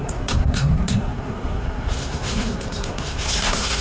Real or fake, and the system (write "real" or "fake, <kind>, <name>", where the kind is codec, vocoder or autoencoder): fake, codec, SNAC